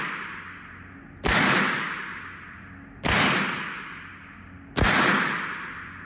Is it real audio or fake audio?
real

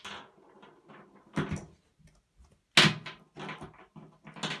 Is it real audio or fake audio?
real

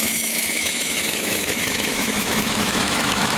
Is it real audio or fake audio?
fake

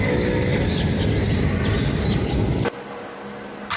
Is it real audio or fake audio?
real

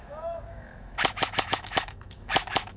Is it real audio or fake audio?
fake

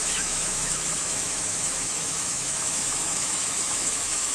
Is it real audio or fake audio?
fake